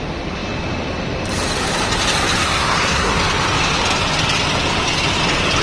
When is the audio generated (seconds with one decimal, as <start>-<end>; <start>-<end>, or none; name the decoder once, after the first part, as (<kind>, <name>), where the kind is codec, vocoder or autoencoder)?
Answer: 2.4-3.2 (codec, SNAC)